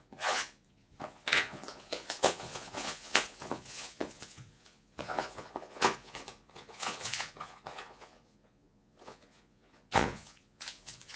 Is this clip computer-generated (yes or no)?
yes